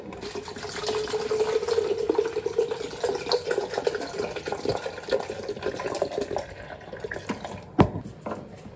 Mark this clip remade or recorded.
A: recorded